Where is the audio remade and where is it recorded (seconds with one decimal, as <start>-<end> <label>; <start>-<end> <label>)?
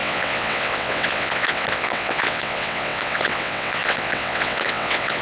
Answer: 0.0-5.2 remade